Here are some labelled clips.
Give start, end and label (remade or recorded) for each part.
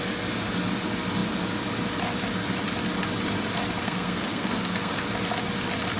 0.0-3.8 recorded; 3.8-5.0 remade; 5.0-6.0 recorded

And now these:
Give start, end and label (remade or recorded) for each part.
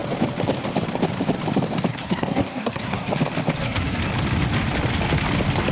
0.0-1.9 recorded; 1.9-3.1 remade; 3.1-3.6 recorded; 3.6-4.0 remade; 4.0-5.7 recorded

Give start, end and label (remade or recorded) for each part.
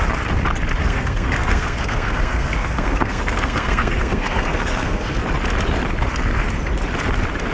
0.0-0.8 recorded; 0.8-5.2 remade; 5.2-7.5 recorded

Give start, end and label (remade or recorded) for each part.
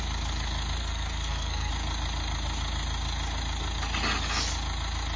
0.0-0.8 recorded; 0.8-1.7 remade; 1.7-5.2 recorded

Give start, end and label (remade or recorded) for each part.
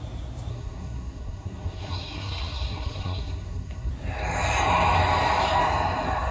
0.0-0.5 recorded; 0.5-3.9 remade; 3.9-6.3 recorded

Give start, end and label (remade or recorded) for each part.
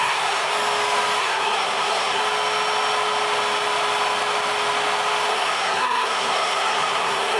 0.0-0.5 remade; 0.5-1.2 recorded; 1.2-2.2 remade; 2.2-5.3 recorded; 5.3-7.4 remade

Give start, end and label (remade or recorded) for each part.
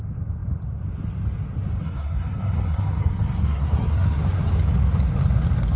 0.0-1.8 recorded; 1.8-4.2 remade; 4.2-5.8 recorded